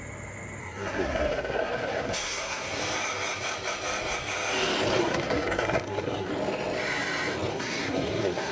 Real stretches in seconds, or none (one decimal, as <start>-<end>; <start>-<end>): 0.0-0.6; 2.8-5.0; 6.3-7.5